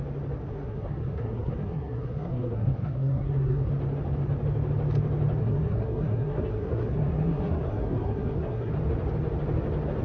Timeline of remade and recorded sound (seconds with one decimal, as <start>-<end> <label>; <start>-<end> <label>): 0.0-0.5 recorded; 0.5-3.7 remade; 3.7-5.4 recorded; 5.4-8.7 remade; 8.7-10.0 recorded